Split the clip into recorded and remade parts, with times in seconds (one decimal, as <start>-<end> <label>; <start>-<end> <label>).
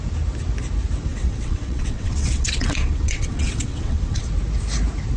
0.0-1.1 recorded; 1.1-4.2 remade; 4.2-5.2 recorded